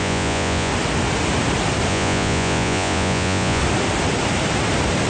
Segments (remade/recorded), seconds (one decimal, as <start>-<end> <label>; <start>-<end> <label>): 0.0-0.7 remade; 0.7-1.9 recorded; 1.9-3.6 remade; 3.6-5.1 recorded